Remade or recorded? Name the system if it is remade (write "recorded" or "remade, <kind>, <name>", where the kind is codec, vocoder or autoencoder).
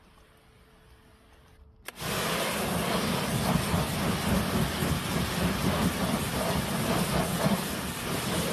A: recorded